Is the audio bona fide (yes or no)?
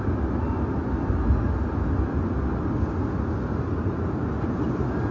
yes